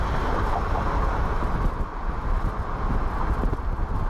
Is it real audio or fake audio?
real